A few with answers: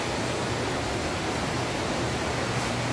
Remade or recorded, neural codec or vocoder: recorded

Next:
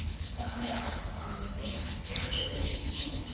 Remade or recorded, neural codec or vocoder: remade, codec, HILCodec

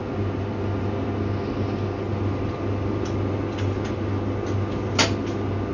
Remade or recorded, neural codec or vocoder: recorded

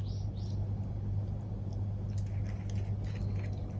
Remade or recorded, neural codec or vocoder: recorded